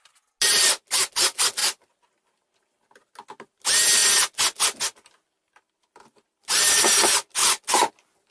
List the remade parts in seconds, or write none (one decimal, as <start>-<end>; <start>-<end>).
none